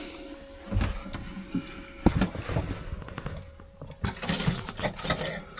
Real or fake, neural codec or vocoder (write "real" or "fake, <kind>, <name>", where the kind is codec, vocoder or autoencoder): real